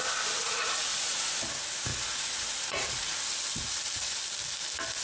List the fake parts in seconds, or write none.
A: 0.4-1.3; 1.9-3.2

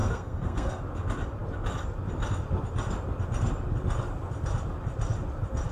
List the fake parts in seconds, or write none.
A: 0.0-0.8

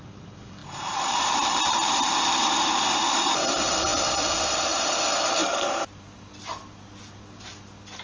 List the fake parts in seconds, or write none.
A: 0.6-1.7; 5.4-6.2

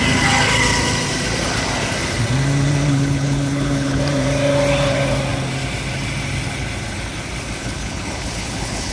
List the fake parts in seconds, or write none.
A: 2.9-4.0; 7.6-8.9

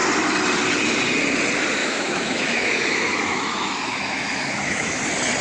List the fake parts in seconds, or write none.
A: 1.8-5.0

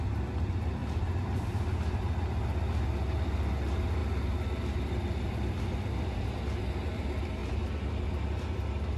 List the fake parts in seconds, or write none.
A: 0.8-2.0